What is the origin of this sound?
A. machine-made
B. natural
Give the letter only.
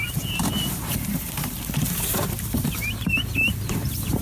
A